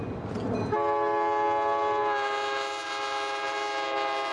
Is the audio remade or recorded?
recorded